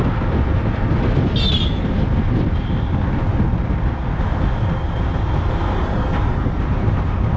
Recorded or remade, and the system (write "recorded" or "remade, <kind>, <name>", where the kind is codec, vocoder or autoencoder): recorded